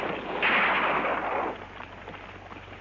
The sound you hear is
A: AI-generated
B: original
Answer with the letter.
B